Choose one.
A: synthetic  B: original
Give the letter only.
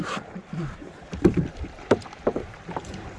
A